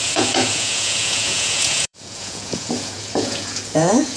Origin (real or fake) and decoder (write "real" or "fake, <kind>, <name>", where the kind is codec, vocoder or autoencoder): fake, vocoder, Vocos